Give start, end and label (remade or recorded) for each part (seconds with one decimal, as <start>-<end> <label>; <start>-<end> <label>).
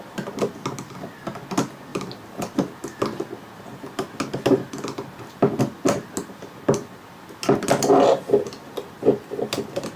0.0-10.0 recorded